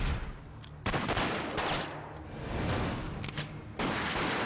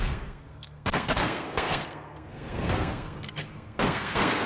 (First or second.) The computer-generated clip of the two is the second